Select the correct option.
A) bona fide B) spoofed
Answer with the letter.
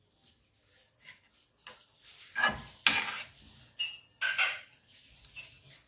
A